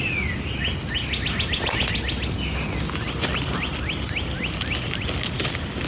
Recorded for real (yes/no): yes